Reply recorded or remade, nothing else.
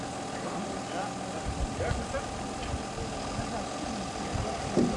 recorded